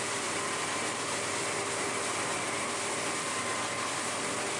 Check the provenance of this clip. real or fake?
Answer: real